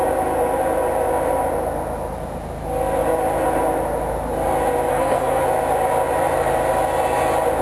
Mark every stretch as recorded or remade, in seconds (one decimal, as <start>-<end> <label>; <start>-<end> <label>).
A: 0.0-4.9 recorded; 4.9-5.4 remade; 5.4-7.6 recorded